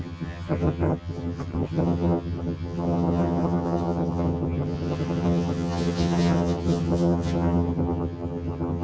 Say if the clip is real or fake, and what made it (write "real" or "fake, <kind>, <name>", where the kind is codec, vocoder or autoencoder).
fake, vocoder, HiFi-GAN